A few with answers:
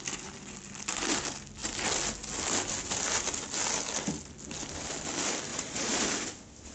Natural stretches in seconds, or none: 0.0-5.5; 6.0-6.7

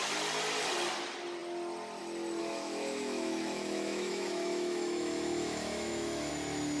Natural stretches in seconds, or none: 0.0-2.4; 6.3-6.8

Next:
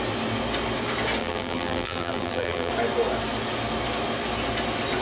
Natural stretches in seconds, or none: 0.0-1.2; 2.7-5.0

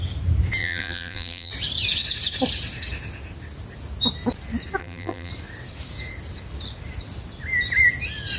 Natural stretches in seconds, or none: 0.0-0.6; 1.5-4.8; 5.3-8.4

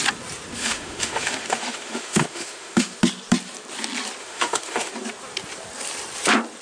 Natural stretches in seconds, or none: 0.0-0.6; 3.0-4.2; 4.9-6.6